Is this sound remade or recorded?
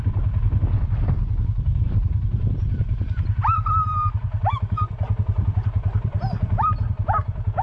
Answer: remade